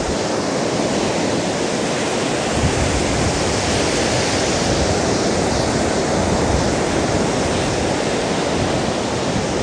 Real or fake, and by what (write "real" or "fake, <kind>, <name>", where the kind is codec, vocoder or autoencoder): real